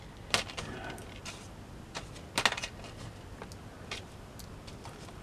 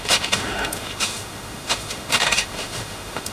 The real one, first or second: first